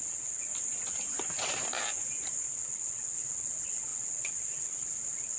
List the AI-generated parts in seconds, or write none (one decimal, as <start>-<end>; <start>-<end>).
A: 0.0-0.5; 2.5-5.4